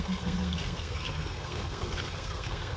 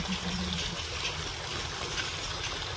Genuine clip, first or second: second